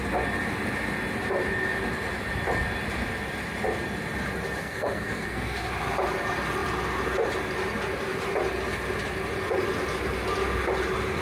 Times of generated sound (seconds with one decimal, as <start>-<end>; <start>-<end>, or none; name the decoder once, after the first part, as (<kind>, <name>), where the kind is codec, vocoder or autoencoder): 4.6-5.7 (codec, SNAC)